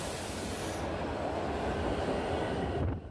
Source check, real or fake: real